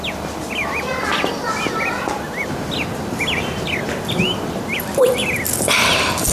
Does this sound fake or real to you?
real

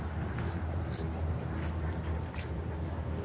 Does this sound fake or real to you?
real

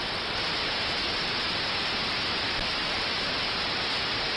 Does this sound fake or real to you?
real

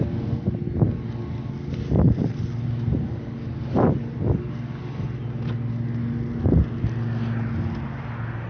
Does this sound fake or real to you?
real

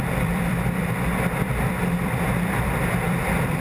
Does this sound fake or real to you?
fake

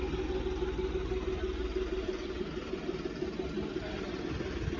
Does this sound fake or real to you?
real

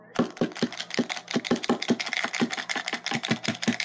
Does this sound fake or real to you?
real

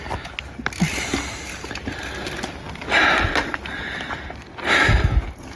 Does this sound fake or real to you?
real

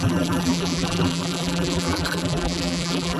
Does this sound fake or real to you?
fake